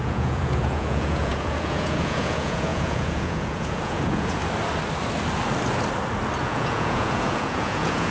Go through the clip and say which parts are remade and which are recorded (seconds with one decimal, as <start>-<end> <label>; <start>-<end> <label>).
0.0-4.4 remade; 4.4-6.4 recorded; 6.4-8.1 remade